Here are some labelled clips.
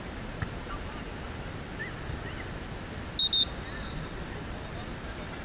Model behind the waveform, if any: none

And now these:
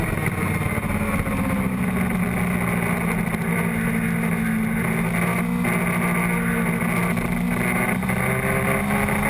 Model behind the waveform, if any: none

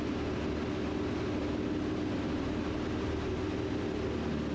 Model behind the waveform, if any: none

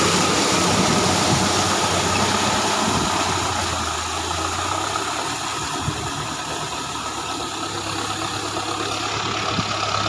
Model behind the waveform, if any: none